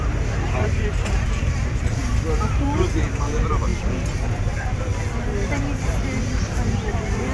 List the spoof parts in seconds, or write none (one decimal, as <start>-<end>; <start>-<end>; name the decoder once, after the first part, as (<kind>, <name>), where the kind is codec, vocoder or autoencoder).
0.0-2.0 (vocoder, BigVGAN v2); 2.5-3.7; 4.3-4.9; 5.9-7.3